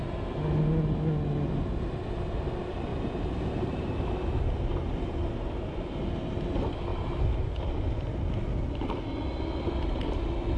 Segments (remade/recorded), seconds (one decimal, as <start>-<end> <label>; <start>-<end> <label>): 0.0-2.9 recorded; 2.9-5.3 remade; 5.3-6.9 recorded; 6.9-7.5 remade; 7.5-10.6 recorded